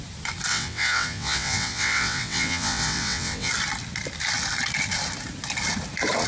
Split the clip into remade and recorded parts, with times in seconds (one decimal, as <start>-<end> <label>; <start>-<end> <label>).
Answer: 0.0-0.5 recorded; 0.5-3.5 remade; 3.5-6.3 recorded